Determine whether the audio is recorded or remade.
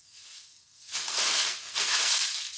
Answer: remade